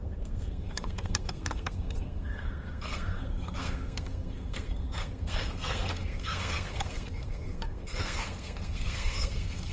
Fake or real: fake